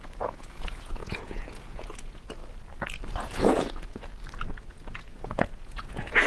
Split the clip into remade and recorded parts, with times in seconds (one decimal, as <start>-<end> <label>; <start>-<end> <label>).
0.0-2.4 remade; 2.4-3.2 recorded; 3.2-4.1 remade; 4.1-4.7 recorded; 4.7-6.3 remade